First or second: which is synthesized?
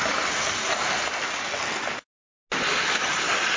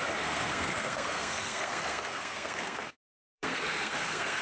second